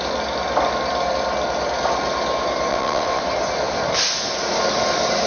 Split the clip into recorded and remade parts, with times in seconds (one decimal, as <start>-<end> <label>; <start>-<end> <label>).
0.0-2.7 recorded; 2.7-3.2 remade; 3.2-5.3 recorded